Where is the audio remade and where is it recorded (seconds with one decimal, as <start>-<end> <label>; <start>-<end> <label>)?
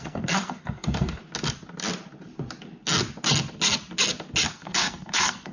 0.0-1.2 remade; 1.2-4.5 recorded; 4.5-5.5 remade